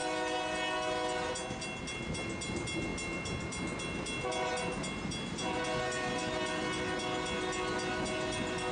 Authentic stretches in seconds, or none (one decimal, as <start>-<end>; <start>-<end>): 0.0-8.7